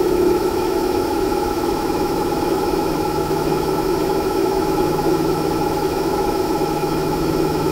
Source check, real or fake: fake